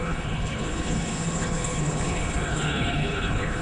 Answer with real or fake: fake